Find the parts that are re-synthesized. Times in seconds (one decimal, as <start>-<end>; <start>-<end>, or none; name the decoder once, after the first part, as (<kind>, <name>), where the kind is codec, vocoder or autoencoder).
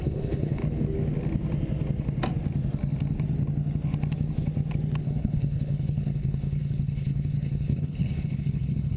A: 0.0-0.6 (codec, HILCodec); 5.0-9.0